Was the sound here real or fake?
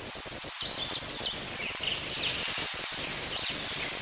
real